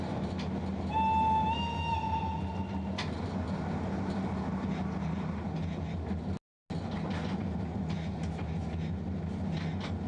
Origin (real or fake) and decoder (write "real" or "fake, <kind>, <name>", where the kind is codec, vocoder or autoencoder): real